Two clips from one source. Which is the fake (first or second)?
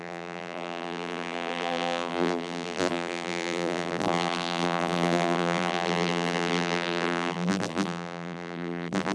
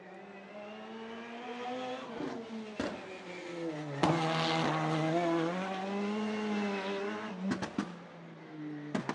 first